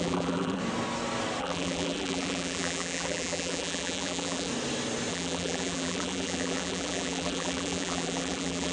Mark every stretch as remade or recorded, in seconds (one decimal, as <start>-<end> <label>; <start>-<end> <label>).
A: 0.0-0.6 remade; 0.6-1.4 recorded; 1.4-4.5 remade; 4.5-5.1 recorded; 5.1-8.7 remade